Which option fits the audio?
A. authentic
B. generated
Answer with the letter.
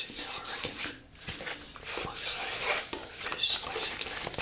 A